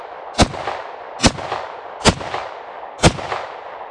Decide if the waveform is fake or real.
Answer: real